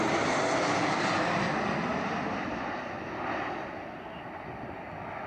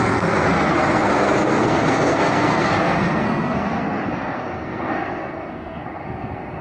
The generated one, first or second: second